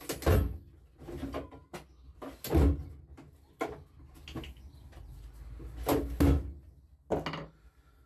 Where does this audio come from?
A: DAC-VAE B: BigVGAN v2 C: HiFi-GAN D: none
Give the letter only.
D